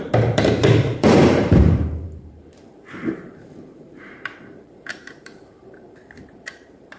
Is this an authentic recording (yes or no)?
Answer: no